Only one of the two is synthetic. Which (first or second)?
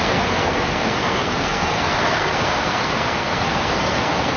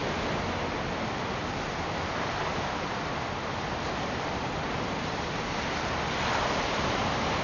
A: first